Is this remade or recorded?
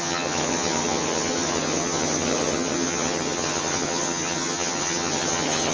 remade